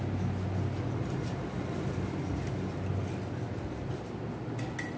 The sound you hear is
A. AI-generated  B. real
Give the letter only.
B